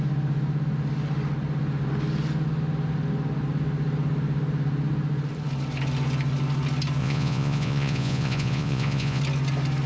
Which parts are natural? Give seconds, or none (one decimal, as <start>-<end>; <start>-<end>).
0.0-7.0; 9.2-9.9